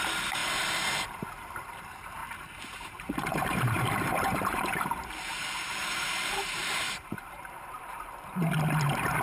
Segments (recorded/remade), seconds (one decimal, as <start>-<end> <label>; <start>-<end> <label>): 0.0-2.2 recorded; 2.2-4.8 remade; 4.8-5.8 recorded; 5.8-8.5 remade; 8.5-9.2 recorded